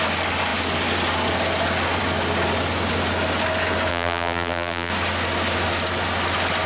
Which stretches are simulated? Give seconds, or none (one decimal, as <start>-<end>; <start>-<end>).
3.9-4.9